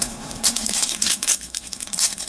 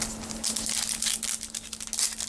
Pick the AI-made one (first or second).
first